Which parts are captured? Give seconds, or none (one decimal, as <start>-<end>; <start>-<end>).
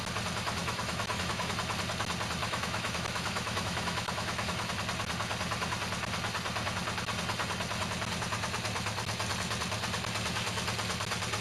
0.0-0.6; 1.5-2.4; 4.7-11.4